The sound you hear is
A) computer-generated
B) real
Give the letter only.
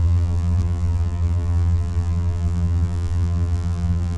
A